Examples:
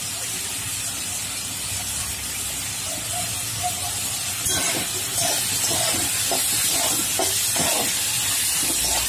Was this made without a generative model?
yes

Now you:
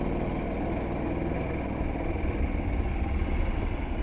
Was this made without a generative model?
yes